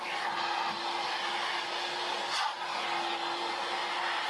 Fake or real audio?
real